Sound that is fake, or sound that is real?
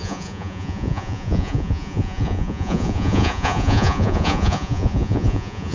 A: fake